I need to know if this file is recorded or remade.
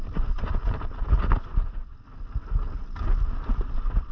recorded